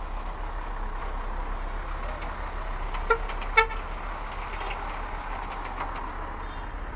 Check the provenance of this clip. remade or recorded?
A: recorded